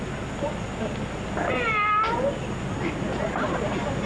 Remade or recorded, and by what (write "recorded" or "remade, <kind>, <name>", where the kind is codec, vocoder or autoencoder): recorded